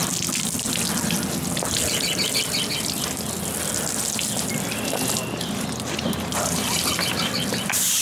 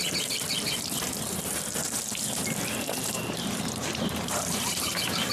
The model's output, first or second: second